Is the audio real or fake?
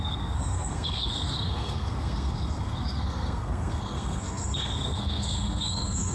fake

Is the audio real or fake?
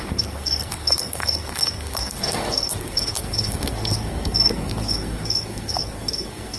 fake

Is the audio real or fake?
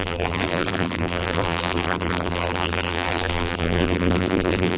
fake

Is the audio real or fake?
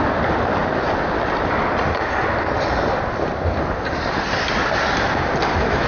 real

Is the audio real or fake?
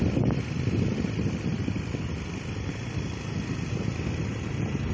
real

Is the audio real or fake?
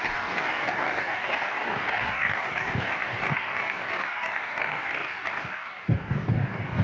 fake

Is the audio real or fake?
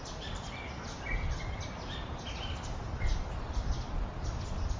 real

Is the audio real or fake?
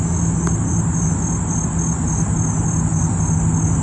real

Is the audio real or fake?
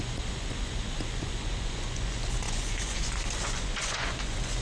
fake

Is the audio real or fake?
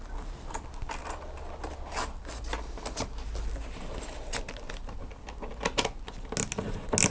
real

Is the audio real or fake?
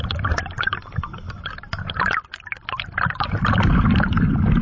real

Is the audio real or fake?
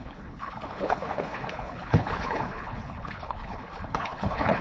fake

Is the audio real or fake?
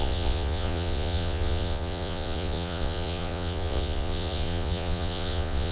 fake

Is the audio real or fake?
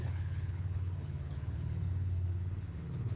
fake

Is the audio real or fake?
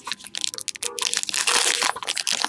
real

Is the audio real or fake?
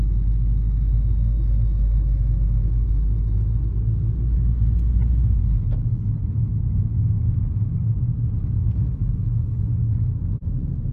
real